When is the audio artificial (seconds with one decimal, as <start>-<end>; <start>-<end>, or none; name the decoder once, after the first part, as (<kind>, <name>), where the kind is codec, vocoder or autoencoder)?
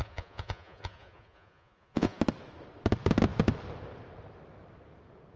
0.0-2.2 (vocoder, Vocos)